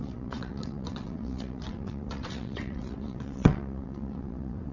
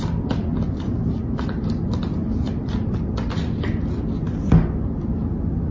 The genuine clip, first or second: second